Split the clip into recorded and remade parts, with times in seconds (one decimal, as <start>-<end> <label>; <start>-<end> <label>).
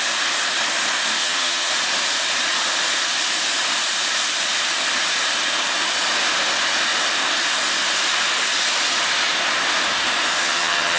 0.0-1.2 recorded; 1.2-1.7 remade; 1.7-10.4 recorded; 10.4-11.0 remade